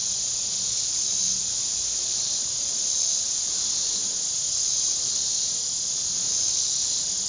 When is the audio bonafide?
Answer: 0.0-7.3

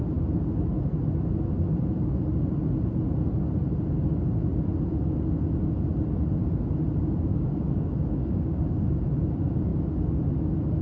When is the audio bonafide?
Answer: 0.0-7.3; 9.0-10.8

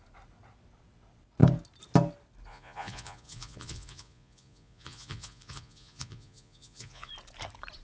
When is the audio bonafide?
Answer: 0.0-2.5; 7.1-7.8

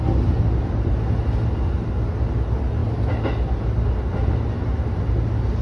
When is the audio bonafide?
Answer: 0.0-5.6

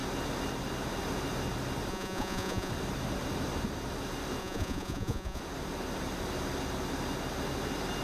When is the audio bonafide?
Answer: 0.0-1.9; 2.7-4.4; 5.4-8.0